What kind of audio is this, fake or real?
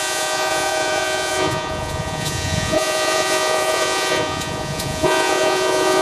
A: fake